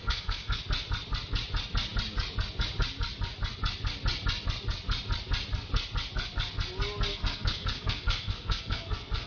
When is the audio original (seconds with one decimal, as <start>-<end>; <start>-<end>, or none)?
0.6-7.1